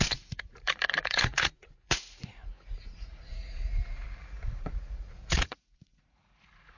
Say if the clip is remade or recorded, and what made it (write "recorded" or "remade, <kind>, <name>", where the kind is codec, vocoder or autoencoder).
remade, vocoder, Vocos